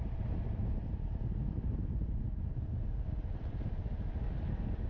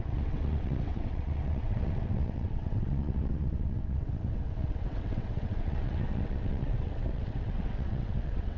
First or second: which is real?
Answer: first